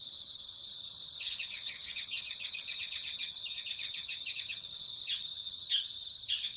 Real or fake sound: fake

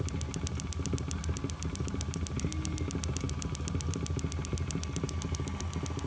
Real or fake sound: real